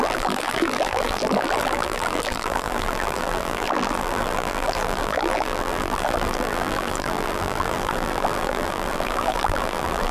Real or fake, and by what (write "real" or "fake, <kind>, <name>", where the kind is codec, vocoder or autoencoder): fake, vocoder, BigVGAN v2